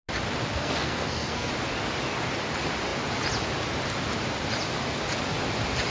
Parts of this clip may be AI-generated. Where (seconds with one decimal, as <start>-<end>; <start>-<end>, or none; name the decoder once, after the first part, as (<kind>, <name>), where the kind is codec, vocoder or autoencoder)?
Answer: 0.5-1.5 (codec, SNAC)